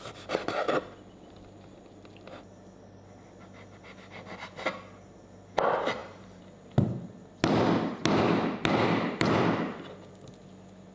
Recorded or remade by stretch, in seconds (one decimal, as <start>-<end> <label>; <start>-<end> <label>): 0.0-6.0 recorded; 6.0-6.8 remade; 6.8-10.9 recorded